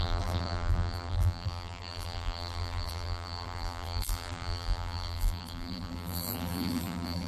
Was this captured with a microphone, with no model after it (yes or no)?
no